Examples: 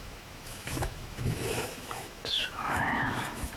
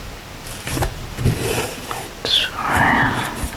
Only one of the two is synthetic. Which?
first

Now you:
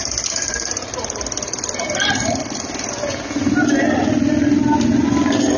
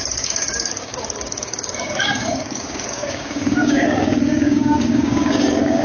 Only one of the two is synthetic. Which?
second